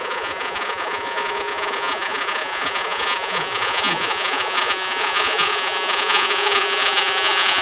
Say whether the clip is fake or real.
fake